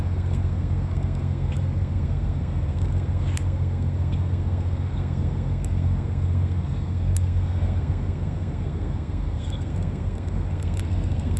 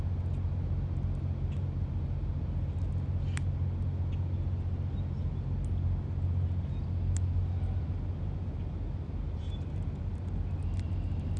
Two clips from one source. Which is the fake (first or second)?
first